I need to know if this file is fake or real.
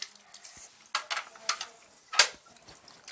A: real